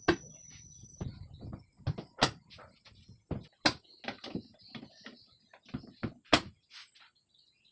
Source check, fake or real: real